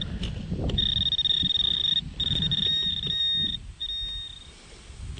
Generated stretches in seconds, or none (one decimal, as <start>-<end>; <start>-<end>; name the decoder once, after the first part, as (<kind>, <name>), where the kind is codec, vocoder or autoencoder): 2.2-3.2 (vocoder, BigVGAN v2)